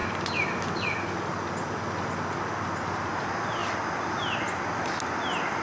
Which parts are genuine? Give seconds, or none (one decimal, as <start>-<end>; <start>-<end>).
0.0-5.6